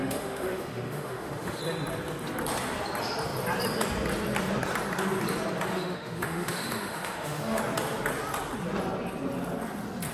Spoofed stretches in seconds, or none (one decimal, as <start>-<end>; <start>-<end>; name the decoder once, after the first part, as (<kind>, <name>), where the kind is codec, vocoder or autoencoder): 0.0-1.6 (autoencoder, DAC-VAE); 5.7-7.6

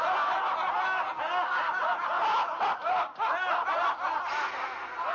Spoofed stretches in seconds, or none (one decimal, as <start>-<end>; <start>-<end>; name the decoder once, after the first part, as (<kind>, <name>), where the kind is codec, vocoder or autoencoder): none

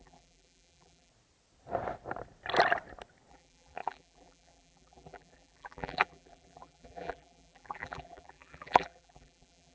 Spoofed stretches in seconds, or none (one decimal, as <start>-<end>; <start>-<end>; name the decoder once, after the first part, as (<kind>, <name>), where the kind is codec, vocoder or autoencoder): 0.0-1.1 (vocoder, BigVGAN v2); 3.3-9.7

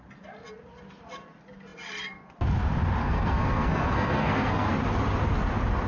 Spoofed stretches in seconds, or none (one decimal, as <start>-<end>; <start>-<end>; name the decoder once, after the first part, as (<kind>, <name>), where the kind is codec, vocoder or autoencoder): 3.0-4.7 (codec, SNAC)

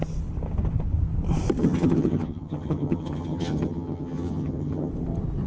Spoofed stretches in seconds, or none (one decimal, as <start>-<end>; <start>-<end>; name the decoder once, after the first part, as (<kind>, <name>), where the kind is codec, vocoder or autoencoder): 1.6-4.9 (vocoder, HiFi-GAN)